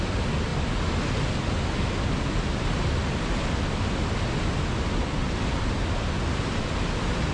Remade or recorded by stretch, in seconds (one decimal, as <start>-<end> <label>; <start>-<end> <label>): 0.0-7.3 recorded